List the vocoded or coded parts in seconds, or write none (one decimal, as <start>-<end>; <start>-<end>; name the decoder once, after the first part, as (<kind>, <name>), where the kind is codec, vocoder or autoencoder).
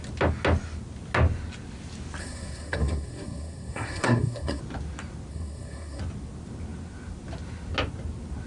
2.2-4.6 (codec, SNAC); 5.3-6.0